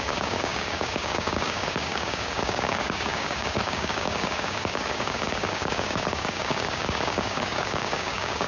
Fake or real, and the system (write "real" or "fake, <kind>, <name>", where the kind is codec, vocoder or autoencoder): fake, codec, DAC